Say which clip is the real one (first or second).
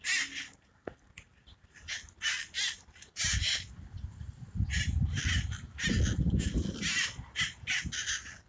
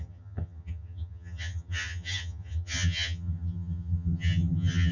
first